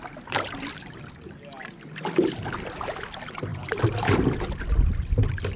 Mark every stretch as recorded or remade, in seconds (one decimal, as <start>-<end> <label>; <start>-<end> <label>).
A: 0.0-5.6 recorded